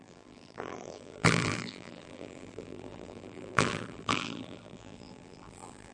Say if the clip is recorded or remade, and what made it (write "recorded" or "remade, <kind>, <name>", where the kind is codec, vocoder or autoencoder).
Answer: remade, vocoder, BigVGAN v2